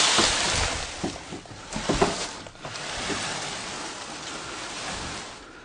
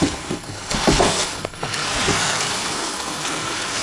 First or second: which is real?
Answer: first